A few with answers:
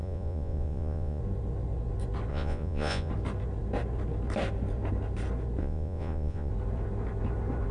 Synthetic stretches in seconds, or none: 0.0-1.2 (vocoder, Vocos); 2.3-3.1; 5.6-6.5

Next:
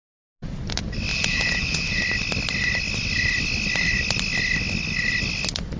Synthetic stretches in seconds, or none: 1.1-2.0 (vocoder, Vocos)

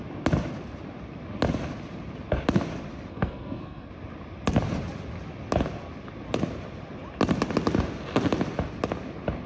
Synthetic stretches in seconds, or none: 3.1-3.9 (codec, SNAC)

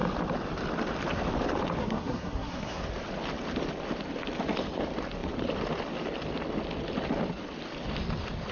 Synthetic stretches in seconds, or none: 1.8-2.8 (codec, SNAC)

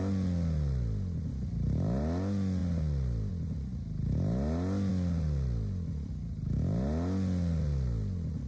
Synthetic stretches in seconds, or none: none

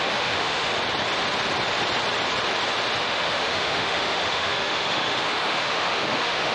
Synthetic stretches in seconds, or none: 0.0-0.7 (autoencoder, DAC-VAE); 3.0-6.5

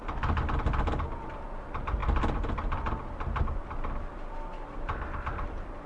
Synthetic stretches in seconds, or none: none

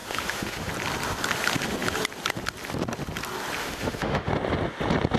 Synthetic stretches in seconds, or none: 0.0-0.7 (autoencoder, DAC-VAE); 3.6-4.3